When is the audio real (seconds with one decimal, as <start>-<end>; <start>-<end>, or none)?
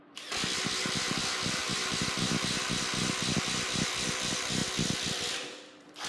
4.6-5.1